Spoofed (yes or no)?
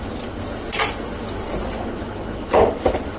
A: no